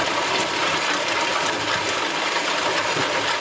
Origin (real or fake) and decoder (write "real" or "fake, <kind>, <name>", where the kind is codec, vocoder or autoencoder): real